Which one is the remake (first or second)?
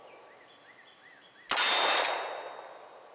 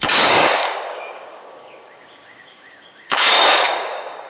second